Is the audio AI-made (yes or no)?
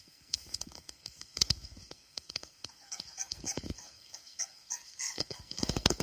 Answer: yes